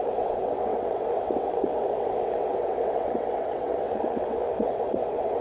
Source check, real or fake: fake